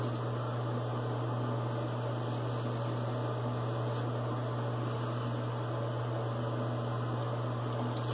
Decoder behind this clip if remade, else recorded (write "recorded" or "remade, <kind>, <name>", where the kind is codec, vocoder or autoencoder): recorded